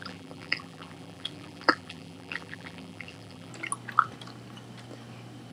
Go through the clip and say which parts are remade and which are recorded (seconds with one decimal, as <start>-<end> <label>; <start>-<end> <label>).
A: 0.0-3.5 remade; 3.5-5.5 recorded